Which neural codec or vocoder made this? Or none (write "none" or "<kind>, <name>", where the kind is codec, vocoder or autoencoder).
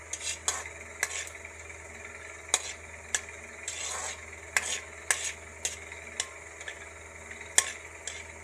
none